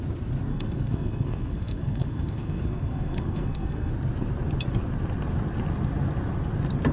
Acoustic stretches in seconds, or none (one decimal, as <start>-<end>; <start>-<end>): 0.0-0.5; 3.9-6.9